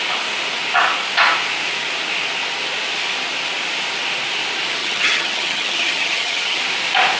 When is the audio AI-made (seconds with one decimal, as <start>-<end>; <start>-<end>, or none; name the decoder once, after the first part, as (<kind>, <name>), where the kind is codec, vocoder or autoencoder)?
4.8-6.6 (vocoder, HiFi-GAN)